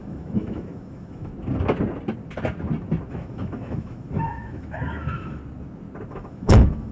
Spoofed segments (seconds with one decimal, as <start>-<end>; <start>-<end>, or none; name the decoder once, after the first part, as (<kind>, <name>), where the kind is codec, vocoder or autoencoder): 0.0-1.3 (autoencoder, DAC-VAE); 3.1-5.4; 6.1-6.9